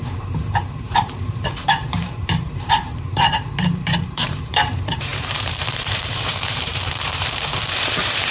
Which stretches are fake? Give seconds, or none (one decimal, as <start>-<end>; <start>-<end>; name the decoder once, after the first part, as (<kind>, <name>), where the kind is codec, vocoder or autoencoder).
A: 0.0-8.3 (vocoder, BigVGAN v2)